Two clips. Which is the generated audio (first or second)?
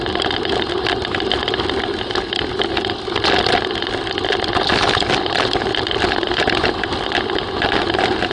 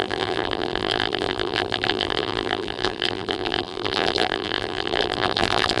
second